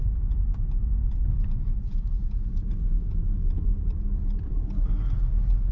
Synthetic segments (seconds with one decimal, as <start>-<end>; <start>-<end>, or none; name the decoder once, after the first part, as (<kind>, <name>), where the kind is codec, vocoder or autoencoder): 0.0-3.2 (vocoder, Vocos)